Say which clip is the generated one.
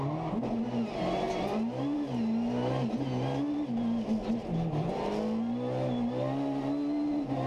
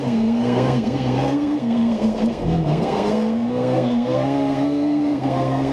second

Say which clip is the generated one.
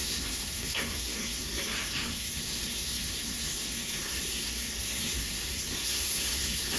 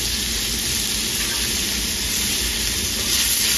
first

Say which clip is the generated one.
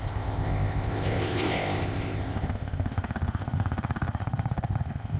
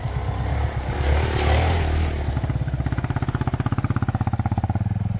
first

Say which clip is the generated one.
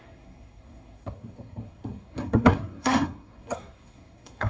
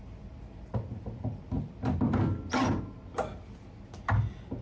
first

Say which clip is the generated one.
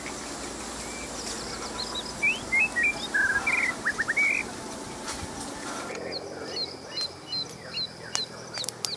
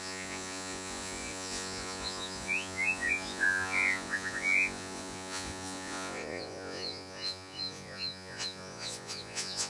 second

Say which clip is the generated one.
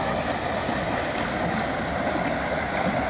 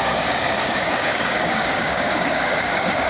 second